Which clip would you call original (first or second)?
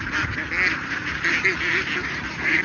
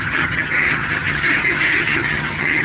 first